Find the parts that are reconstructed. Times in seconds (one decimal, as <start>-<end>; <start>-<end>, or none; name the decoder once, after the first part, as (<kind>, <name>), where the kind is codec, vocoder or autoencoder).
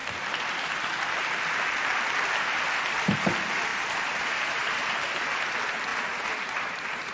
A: 3.7-4.9 (vocoder, BigVGAN v2); 5.9-7.1